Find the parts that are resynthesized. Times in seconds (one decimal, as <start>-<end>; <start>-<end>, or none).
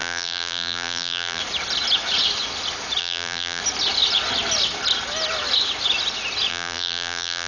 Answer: 0.0-1.4; 3.0-3.6; 6.5-7.5